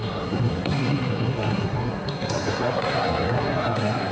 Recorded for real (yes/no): no